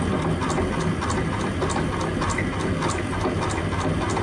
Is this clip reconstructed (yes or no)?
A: no